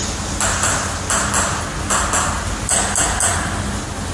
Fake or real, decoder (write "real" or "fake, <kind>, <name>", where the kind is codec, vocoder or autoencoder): real